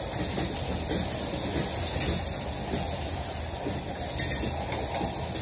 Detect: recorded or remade recorded